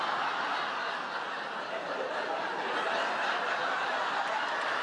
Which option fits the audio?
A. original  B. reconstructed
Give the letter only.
A